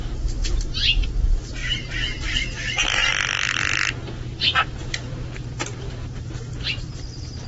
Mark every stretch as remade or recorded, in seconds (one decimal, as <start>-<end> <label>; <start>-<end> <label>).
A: 0.0-7.5 recorded